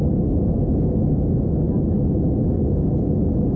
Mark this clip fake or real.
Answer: real